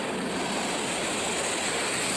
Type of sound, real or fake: real